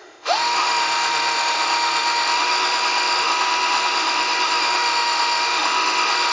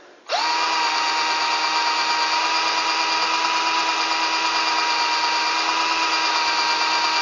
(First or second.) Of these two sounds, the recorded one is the second